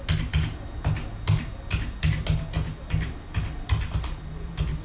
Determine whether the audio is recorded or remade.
recorded